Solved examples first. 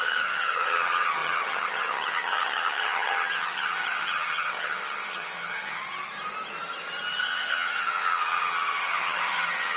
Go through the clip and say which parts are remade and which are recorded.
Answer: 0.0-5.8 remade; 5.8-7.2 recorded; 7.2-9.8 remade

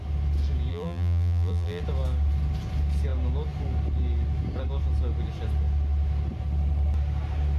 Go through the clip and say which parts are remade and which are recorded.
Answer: 0.0-0.7 recorded; 0.7-1.8 remade; 1.8-7.6 recorded